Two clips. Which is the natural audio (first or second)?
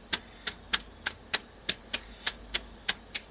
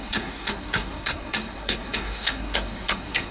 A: first